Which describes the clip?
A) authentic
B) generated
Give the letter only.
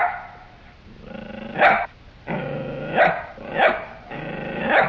A